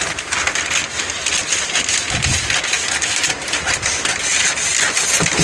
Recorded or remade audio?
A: recorded